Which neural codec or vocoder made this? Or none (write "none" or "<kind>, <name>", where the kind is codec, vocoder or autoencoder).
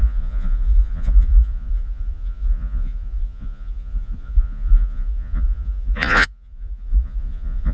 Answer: vocoder, Vocos